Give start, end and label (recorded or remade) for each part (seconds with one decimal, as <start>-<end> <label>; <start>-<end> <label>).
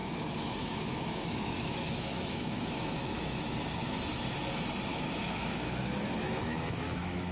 0.0-3.5 remade; 3.5-4.9 recorded; 4.9-7.3 remade